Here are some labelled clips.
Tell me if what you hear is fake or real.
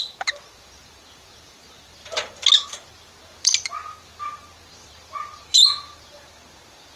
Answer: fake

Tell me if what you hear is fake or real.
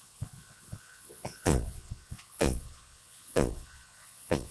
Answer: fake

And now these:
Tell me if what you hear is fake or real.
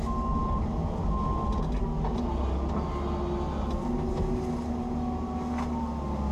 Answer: real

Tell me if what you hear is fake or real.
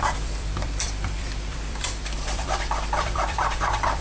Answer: fake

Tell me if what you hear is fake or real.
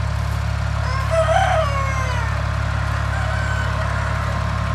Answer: real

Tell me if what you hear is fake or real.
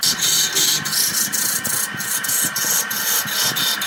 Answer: real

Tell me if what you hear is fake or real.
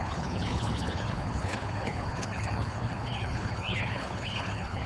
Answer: fake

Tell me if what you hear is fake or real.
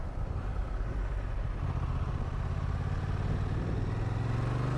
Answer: real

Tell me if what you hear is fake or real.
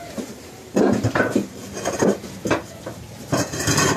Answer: fake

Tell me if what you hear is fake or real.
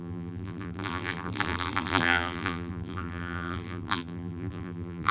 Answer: fake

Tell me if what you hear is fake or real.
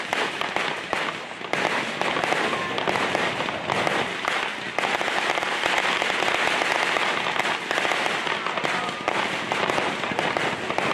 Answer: real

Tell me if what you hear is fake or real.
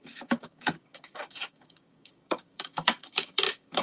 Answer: fake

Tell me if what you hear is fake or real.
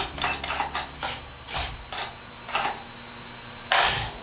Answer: real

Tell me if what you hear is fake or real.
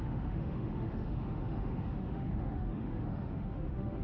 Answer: fake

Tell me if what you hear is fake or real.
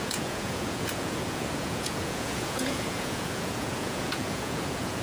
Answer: fake